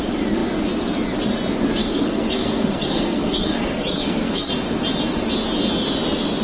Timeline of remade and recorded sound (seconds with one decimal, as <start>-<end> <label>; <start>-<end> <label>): 0.0-1.8 recorded; 1.8-4.5 remade; 4.5-6.4 recorded